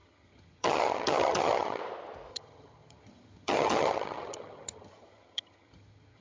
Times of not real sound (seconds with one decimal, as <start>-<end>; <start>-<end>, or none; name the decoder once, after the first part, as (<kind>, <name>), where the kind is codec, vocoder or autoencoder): 0.0-1.8 (vocoder, HiFi-GAN); 2.3-6.2